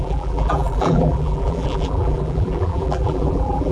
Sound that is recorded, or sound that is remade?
remade